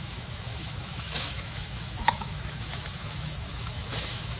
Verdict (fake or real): fake